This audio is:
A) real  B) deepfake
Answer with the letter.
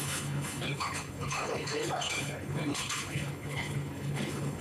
B